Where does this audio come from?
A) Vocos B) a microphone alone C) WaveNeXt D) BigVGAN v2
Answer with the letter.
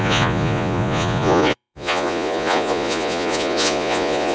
A